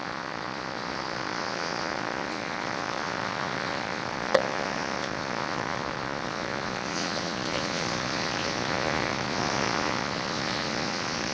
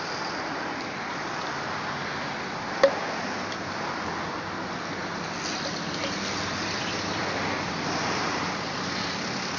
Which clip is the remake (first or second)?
first